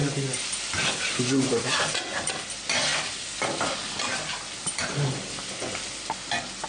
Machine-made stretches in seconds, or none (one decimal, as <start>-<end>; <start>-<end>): 0.0-2.3; 2.9-4.8